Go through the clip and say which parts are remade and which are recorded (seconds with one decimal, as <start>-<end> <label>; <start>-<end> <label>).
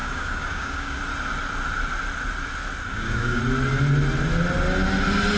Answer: 0.0-1.0 remade; 1.0-2.9 recorded; 2.9-3.4 remade; 3.4-5.4 recorded